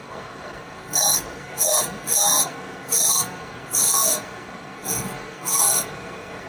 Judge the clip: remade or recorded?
remade